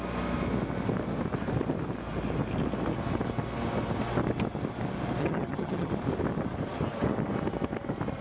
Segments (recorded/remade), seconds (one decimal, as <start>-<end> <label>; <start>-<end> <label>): 0.0-5.2 recorded; 5.2-5.9 remade; 5.9-8.2 recorded